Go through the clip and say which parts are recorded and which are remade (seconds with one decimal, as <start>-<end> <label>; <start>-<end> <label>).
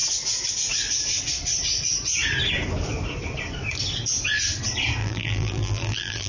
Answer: 0.0-5.0 recorded; 5.0-6.3 remade